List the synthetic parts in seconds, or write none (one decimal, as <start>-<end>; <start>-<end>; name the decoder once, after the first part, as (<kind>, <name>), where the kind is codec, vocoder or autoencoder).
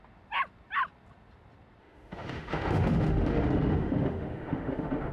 1.8-5.1 (autoencoder, DAC-VAE)